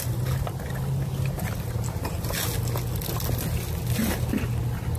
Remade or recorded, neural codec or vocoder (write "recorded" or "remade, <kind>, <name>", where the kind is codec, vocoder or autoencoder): recorded